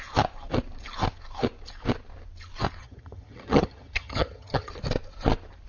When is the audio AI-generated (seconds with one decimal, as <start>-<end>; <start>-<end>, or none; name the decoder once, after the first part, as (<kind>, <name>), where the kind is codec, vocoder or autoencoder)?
2.8-4.7 (vocoder, HiFi-GAN)